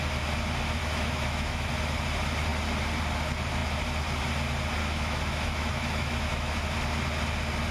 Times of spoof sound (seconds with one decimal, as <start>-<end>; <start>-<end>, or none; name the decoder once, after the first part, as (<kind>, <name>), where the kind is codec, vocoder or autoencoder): 0.8-1.7 (autoencoder, DAC-VAE); 4.8-6.6